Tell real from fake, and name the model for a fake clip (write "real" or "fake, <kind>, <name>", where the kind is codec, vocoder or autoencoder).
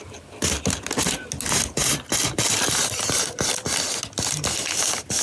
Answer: real